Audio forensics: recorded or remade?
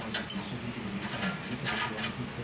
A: recorded